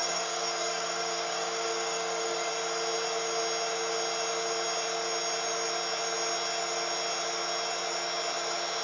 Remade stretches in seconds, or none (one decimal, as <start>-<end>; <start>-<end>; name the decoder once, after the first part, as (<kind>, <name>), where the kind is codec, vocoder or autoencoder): 0.0-2.5 (codec, DAC)